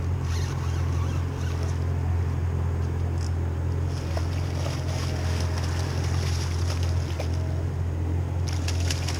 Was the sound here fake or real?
real